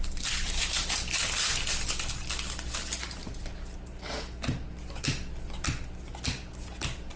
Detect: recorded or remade recorded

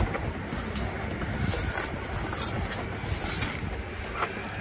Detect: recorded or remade recorded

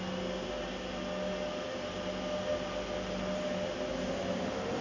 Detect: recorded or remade recorded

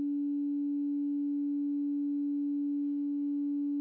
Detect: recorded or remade recorded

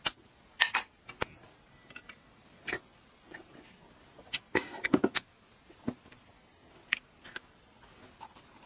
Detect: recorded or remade recorded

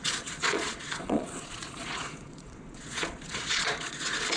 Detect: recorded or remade remade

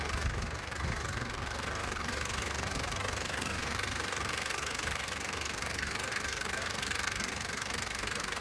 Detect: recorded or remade remade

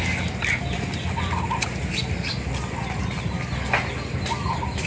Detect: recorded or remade recorded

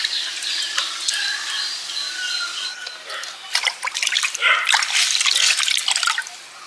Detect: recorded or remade recorded